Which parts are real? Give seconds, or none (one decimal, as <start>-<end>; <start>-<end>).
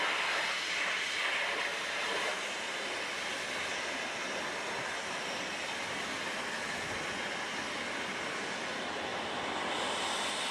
0.0-10.5